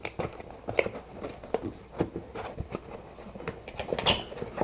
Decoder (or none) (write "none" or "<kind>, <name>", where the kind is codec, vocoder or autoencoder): none